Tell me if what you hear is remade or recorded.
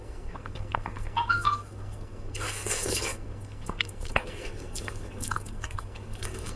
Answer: remade